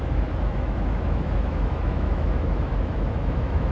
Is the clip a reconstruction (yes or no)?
yes